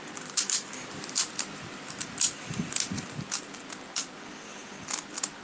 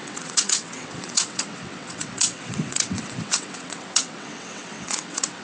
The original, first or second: first